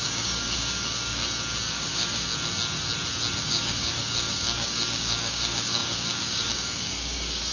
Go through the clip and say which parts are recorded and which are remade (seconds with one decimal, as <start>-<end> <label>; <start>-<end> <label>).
0.0-1.2 remade; 1.2-1.7 recorded; 1.7-2.3 remade; 2.3-3.4 recorded; 3.4-7.5 remade